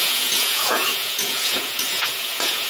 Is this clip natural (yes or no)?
no